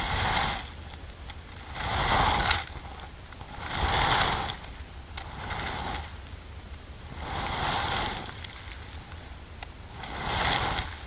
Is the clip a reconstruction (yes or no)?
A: no